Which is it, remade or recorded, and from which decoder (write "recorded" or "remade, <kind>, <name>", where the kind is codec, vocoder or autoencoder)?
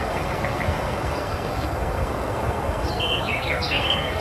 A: remade, codec, SNAC